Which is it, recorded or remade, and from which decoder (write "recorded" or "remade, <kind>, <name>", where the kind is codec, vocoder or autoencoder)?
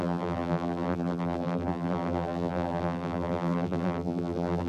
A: remade, vocoder, BigVGAN v2